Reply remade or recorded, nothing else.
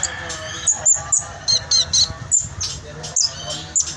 recorded